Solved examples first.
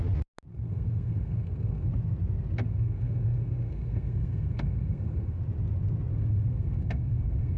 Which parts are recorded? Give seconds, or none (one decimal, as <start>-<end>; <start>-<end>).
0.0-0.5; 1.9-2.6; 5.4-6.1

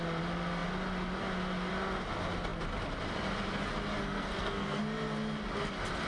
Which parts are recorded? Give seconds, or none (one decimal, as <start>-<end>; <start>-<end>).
0.0-4.0; 4.8-6.1

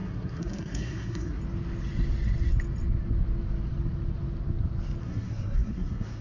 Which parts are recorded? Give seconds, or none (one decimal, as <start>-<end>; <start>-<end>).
1.4-5.0

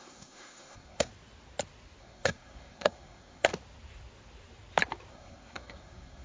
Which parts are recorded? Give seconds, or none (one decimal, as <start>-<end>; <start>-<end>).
1.1-2.0; 3.5-5.1